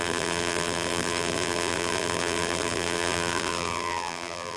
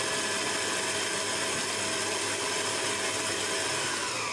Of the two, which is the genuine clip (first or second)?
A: second